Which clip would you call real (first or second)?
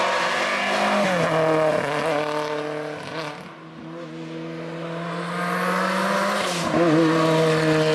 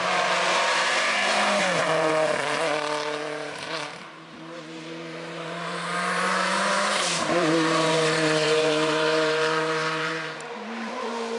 first